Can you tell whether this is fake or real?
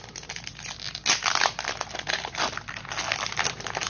real